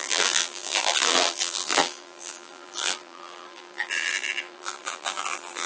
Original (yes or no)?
no